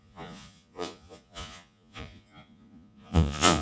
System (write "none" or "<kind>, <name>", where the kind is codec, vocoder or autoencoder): vocoder, Vocos